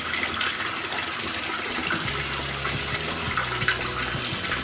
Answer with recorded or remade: recorded